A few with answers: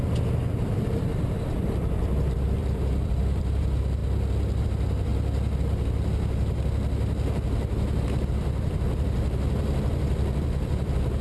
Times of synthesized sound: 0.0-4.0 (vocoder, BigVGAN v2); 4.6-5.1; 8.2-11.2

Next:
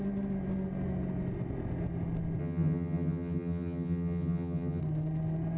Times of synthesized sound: 2.4-4.8 (vocoder, HiFi-GAN)

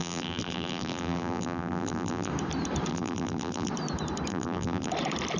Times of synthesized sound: 0.0-2.3 (vocoder, BigVGAN v2); 2.9-3.7; 4.3-4.9

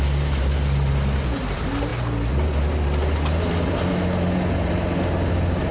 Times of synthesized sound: none

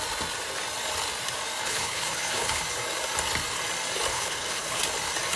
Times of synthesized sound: 1.6-2.6 (codec, HILCodec); 4.1-4.8

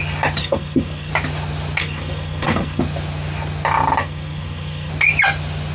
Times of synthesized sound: 0.4-1.1 (codec, SNAC); 1.8-2.8; 4.0-4.9

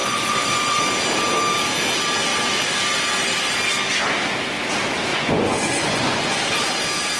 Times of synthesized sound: 0.0-0.8 (vocoder, Vocos); 5.1-6.4